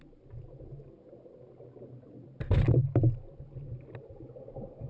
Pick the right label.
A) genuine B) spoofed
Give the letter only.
A